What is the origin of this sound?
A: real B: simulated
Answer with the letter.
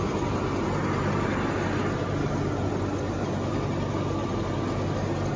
A